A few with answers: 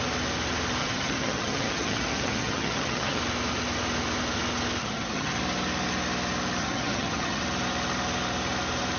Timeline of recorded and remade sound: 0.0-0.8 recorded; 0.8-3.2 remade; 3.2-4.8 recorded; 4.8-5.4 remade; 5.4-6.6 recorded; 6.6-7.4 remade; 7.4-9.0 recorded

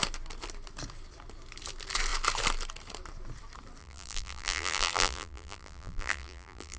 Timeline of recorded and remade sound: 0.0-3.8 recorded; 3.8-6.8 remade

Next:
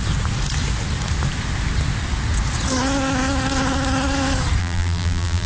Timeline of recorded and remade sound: 0.0-4.6 recorded; 4.6-5.5 remade

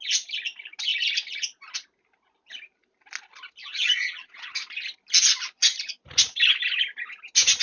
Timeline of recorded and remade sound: 0.0-3.6 recorded; 3.6-4.5 remade; 4.5-7.6 recorded

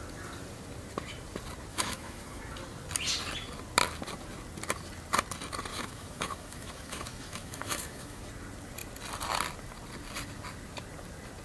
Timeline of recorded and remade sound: 0.0-1.7 recorded; 1.7-2.4 remade; 2.4-5.7 recorded; 5.7-8.2 remade; 8.2-11.4 recorded

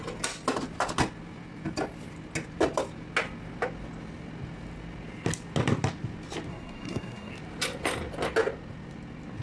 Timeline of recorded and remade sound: 0.0-6.5 recorded; 6.5-7.3 remade; 7.3-9.4 recorded

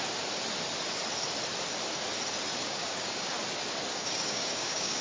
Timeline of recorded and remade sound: 0.0-2.6 recorded; 2.6-3.3 remade; 3.3-3.9 recorded; 3.9-5.0 remade